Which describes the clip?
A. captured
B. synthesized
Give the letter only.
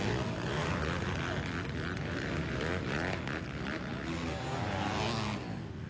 A